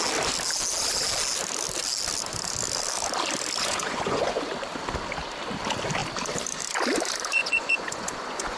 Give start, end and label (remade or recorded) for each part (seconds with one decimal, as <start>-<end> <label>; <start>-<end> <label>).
0.0-3.6 recorded; 3.6-4.5 remade; 4.5-7.4 recorded; 7.4-8.6 remade